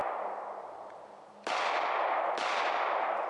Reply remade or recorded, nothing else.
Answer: recorded